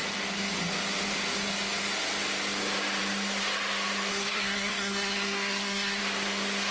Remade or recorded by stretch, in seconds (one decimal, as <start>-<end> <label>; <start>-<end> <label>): 0.0-4.1 recorded; 4.1-6.0 remade; 6.0-6.7 recorded